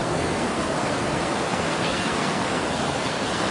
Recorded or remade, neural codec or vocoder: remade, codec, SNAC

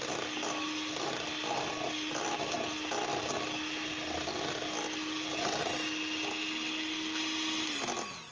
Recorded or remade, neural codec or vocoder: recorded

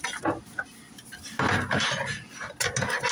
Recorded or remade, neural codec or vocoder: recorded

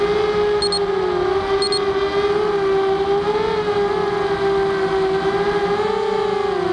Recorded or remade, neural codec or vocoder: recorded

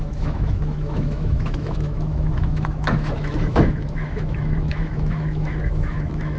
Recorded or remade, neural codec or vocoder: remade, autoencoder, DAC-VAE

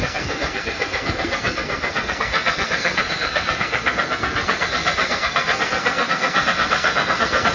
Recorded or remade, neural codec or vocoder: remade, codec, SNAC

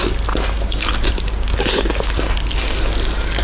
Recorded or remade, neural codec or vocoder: recorded